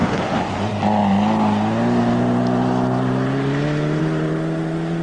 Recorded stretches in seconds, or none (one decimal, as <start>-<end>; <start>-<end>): 0.5-5.0